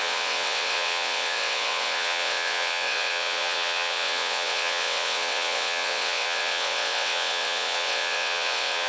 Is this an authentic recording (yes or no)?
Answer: no